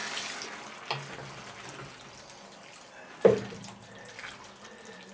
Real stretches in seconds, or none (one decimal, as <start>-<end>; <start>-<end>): 0.0-5.1